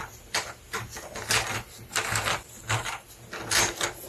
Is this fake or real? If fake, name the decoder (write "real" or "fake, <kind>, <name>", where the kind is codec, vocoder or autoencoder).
real